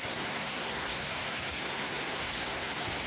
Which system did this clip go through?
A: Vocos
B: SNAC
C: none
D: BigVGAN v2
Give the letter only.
B